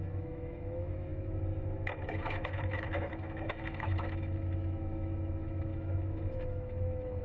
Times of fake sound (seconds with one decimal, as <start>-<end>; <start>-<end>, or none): 0.0-7.2